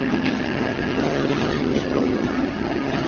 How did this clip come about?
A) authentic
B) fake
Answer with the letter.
B